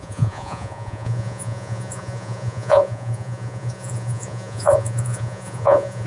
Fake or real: fake